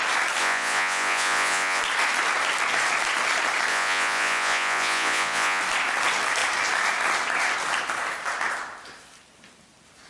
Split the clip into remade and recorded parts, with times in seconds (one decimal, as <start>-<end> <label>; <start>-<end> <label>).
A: 0.0-0.4 recorded; 0.4-1.8 remade; 1.8-3.7 recorded; 3.7-5.6 remade; 5.6-10.1 recorded